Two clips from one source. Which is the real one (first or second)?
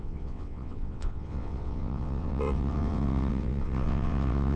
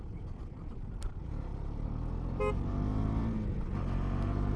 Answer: second